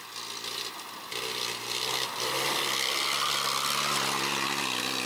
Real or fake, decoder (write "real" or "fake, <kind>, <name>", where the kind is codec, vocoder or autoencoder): real